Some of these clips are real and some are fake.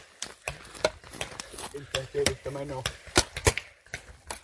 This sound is real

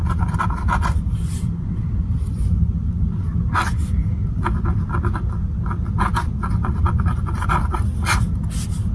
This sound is real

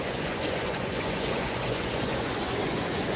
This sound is fake